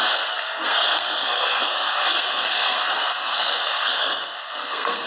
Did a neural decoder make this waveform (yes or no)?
yes